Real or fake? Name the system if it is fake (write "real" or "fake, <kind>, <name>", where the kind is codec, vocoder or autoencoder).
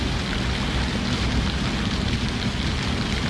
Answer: real